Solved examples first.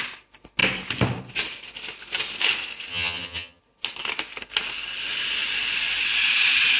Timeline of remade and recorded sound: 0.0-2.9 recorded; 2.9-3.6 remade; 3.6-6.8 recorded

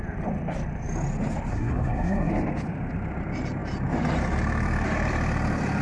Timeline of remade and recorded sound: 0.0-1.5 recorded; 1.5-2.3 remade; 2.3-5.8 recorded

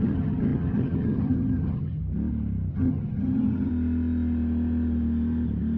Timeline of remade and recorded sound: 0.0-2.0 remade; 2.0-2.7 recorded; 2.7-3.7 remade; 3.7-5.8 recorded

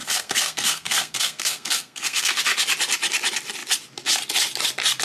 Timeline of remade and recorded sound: 0.0-2.4 remade; 2.4-5.0 recorded